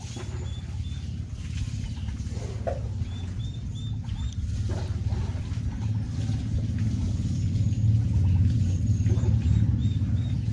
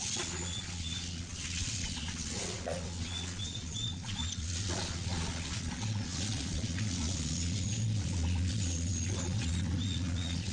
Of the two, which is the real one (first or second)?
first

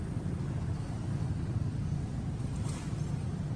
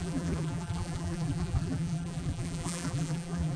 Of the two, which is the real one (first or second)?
first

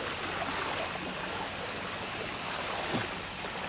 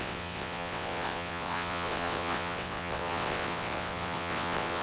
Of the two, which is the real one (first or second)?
first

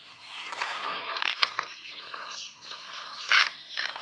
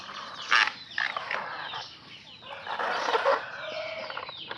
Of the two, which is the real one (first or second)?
second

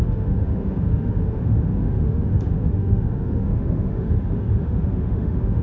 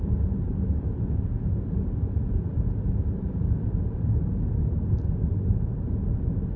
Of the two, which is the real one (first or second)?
second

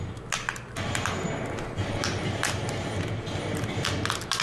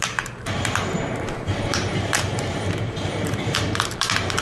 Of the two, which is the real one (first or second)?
first